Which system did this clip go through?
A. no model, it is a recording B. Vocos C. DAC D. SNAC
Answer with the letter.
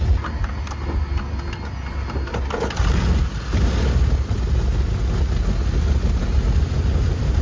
A